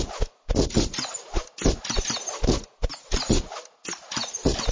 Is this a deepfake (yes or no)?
no